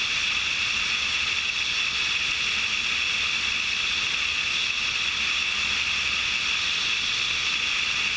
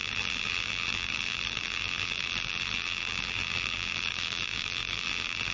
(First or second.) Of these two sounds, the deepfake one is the second